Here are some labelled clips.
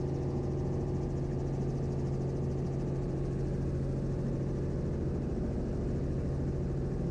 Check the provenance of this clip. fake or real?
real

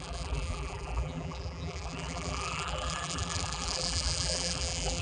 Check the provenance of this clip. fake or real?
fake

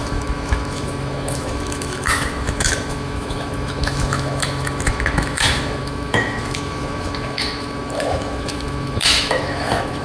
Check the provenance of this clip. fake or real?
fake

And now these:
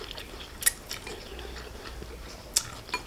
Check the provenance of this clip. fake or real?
real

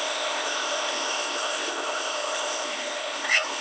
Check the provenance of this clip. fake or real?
fake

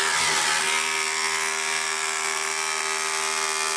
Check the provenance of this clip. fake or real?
real